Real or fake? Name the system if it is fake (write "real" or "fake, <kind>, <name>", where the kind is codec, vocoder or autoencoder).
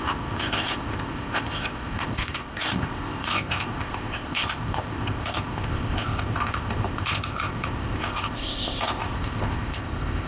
fake, codec, ZipCodec